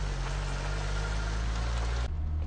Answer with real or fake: real